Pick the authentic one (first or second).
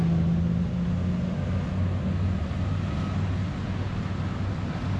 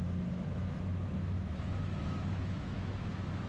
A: first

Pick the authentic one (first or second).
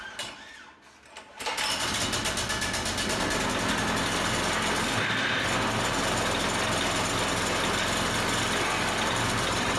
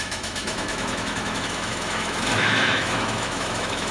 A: first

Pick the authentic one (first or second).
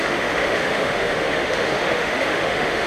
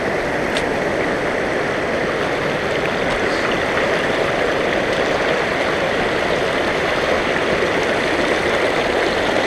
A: second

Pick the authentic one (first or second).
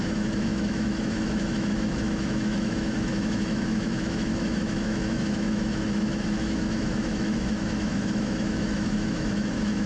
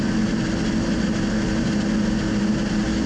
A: second